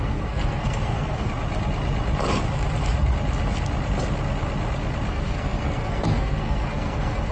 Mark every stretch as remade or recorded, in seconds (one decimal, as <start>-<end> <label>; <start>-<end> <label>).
0.0-1.3 remade; 1.3-5.1 recorded; 5.1-7.3 remade